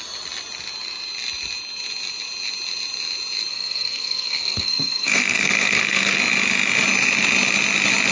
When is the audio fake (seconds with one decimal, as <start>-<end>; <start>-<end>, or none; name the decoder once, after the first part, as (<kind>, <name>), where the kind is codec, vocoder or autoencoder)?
3.5-6.2 (codec, SNAC)